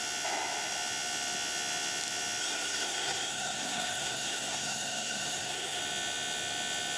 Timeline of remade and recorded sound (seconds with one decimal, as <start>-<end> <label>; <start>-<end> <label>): 0.0-2.4 recorded; 2.4-5.8 remade; 5.8-7.0 recorded